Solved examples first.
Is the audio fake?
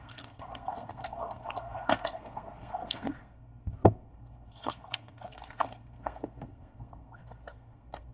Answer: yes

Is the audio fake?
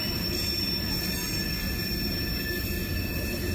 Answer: no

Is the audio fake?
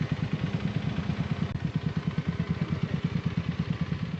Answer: no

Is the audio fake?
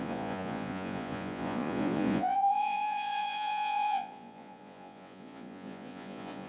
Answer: yes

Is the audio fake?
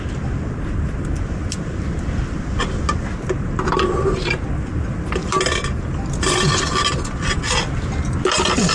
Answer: no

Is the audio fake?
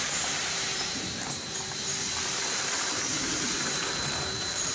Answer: yes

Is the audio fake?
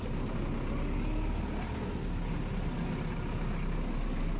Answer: no